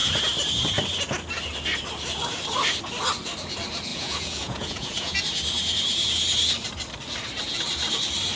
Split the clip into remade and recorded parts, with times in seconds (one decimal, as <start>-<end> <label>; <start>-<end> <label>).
0.0-3.9 recorded; 3.9-5.2 remade; 5.2-8.4 recorded

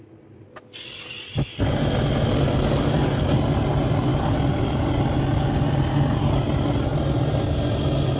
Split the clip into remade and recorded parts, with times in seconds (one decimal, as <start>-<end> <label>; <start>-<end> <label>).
0.0-8.2 recorded

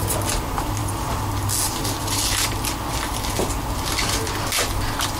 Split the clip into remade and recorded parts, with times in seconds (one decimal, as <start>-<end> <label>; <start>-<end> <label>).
0.0-5.2 recorded

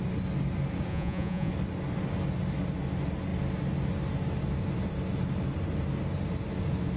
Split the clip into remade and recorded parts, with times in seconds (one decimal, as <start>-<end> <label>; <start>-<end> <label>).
0.0-0.9 recorded; 0.9-1.5 remade; 1.5-7.0 recorded

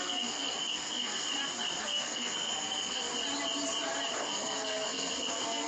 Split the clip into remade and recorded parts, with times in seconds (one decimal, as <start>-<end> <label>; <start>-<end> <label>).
0.0-1.3 remade; 1.3-1.8 recorded; 1.8-3.1 remade; 3.1-4.2 recorded; 4.2-5.7 remade

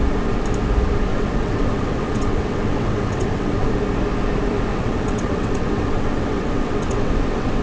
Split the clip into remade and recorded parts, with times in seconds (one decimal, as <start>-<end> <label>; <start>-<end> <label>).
0.0-1.1 recorded; 1.1-3.7 remade; 3.7-4.7 recorded; 4.7-7.6 remade

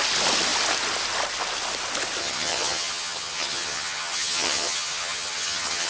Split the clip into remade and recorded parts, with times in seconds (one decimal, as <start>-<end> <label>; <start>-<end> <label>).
0.0-2.2 recorded; 2.2-5.9 remade